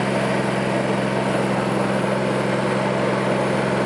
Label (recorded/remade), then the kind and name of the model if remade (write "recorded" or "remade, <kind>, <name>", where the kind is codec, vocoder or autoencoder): recorded